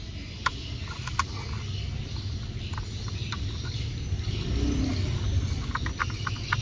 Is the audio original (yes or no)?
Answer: yes